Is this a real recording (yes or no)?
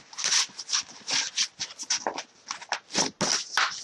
yes